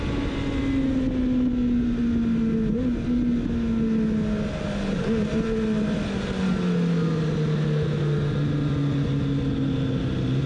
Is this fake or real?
real